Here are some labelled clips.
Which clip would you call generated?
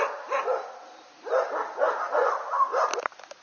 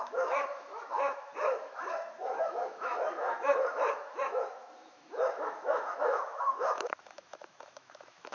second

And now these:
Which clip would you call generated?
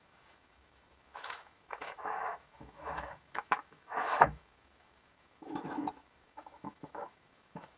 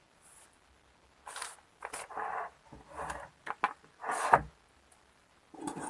first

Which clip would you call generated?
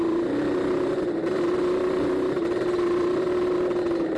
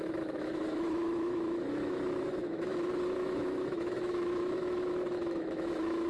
second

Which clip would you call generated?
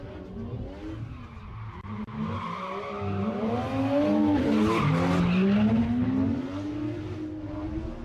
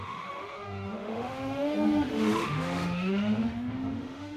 second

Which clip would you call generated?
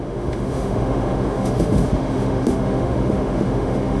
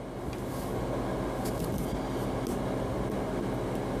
first